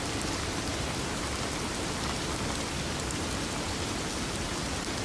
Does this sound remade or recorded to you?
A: recorded